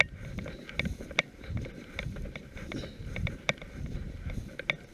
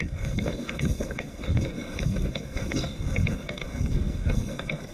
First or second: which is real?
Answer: first